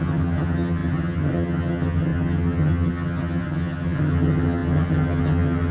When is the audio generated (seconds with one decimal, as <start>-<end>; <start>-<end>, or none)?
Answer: 0.0-5.7